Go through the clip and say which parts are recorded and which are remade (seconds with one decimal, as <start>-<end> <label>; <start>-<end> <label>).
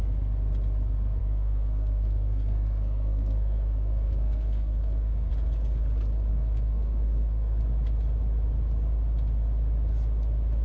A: 0.0-1.2 recorded; 1.2-5.3 remade; 5.3-6.3 recorded; 6.3-7.6 remade; 7.6-10.6 recorded